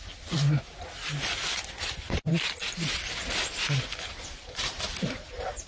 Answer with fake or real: real